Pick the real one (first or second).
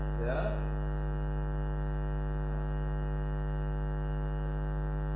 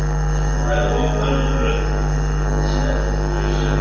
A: first